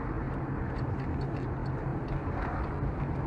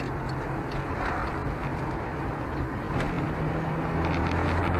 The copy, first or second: first